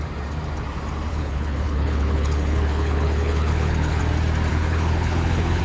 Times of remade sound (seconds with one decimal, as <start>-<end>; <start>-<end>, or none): 1.1-4.0; 4.5-5.6